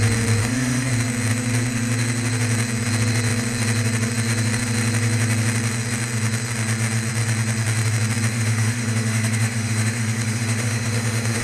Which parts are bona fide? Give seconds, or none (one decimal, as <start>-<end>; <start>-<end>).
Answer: 0.0-0.4; 0.9-8.3